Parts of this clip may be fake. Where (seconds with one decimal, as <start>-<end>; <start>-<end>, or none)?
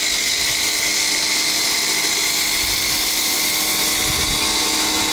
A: none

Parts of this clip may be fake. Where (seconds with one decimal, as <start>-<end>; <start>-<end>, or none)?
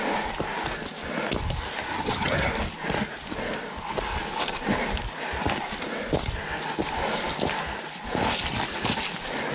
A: 1.9-2.5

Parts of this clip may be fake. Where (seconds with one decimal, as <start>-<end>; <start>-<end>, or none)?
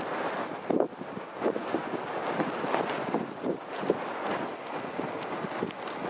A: none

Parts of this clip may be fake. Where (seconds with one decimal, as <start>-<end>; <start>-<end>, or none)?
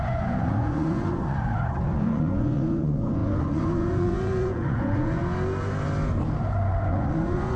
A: 0.0-5.2; 6.8-7.6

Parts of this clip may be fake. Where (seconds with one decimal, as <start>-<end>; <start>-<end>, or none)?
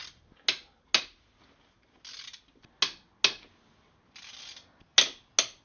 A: none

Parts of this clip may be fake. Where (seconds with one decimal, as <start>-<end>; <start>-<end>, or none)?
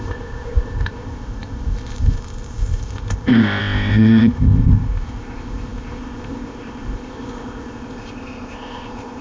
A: 0.0-9.2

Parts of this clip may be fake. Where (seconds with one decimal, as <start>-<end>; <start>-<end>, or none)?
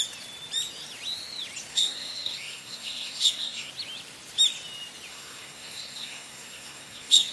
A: 1.7-3.7; 5.1-7.3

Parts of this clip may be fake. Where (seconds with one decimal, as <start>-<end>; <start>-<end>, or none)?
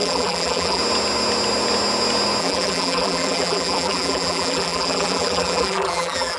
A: 0.0-0.8; 2.4-6.4